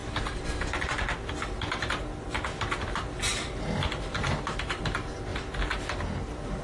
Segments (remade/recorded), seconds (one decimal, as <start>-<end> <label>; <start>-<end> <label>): 0.0-6.6 recorded